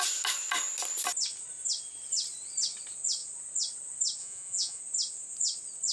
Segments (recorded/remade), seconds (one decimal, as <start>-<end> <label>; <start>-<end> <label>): 0.0-4.2 recorded; 4.2-4.8 remade; 4.8-5.9 recorded

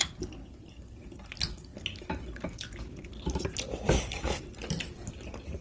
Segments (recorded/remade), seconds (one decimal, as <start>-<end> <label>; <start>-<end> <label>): 0.0-5.6 recorded

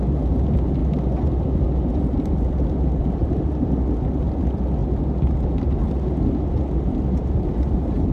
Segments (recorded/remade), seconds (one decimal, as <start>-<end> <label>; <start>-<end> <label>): 0.0-8.1 recorded

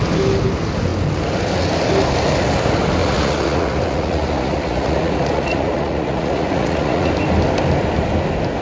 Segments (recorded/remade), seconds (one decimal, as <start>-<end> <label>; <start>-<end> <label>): 0.0-3.0 recorded; 3.0-7.1 remade; 7.1-8.6 recorded

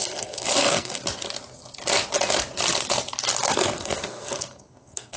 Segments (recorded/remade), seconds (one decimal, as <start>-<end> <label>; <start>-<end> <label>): 0.0-1.0 remade; 1.0-3.5 recorded; 3.5-5.2 remade

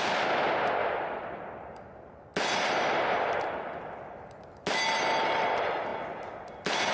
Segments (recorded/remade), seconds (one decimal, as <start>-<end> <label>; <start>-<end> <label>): 0.0-0.8 recorded; 0.8-1.4 remade; 1.4-6.9 recorded

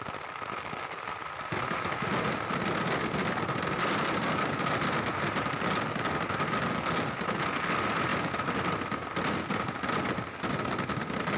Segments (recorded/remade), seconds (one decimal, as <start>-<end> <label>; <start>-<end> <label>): 0.0-11.4 recorded

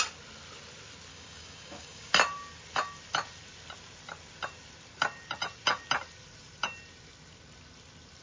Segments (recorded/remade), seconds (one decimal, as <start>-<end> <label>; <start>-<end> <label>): 0.0-1.1 recorded; 1.1-2.1 remade; 2.1-8.2 recorded